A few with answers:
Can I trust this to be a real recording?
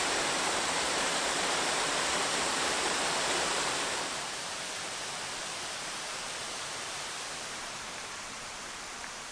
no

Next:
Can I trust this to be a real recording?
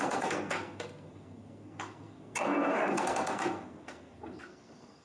no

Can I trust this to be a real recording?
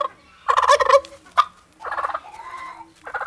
yes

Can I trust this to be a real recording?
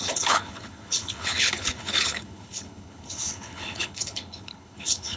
no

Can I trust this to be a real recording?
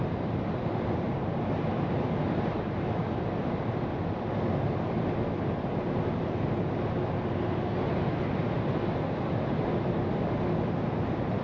yes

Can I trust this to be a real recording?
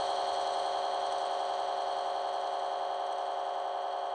yes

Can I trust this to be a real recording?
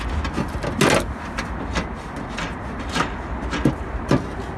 yes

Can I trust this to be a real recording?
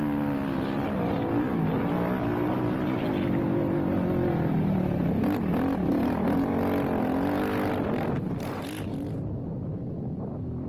yes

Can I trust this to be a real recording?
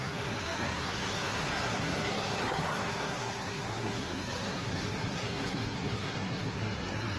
no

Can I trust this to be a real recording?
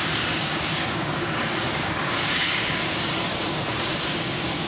no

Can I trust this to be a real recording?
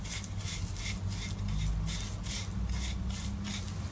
yes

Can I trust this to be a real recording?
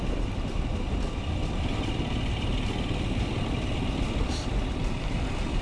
yes